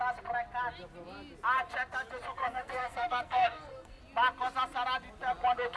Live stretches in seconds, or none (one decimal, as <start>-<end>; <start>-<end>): 0.0-2.4; 4.0-5.8